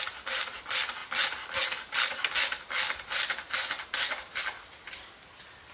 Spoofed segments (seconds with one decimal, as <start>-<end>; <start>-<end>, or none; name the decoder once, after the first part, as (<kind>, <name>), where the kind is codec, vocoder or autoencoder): none